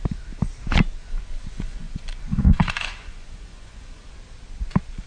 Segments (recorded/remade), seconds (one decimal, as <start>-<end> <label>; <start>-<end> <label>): 0.0-1.0 recorded; 1.0-4.1 remade; 4.1-5.1 recorded